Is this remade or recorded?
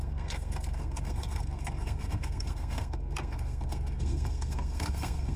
remade